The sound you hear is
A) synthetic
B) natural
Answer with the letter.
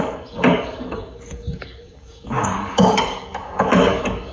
A